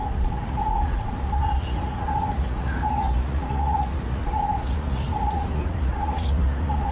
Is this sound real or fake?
fake